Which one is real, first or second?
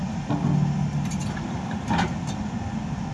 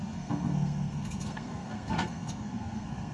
first